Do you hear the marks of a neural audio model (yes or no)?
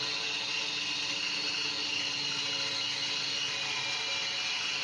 no